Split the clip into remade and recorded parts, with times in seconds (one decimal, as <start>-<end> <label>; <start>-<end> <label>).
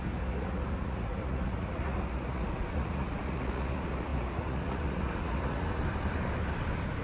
0.0-5.8 remade; 5.8-7.0 recorded